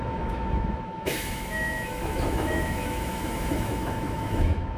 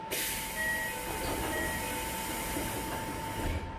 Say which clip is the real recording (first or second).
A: second